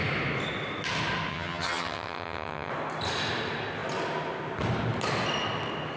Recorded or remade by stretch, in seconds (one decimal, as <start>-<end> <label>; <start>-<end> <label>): 0.0-1.3 recorded; 1.3-2.7 remade; 2.7-6.0 recorded